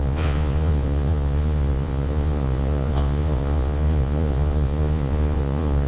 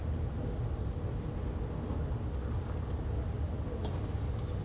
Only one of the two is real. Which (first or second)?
second